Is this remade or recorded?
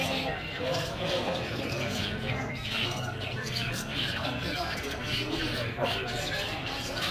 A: remade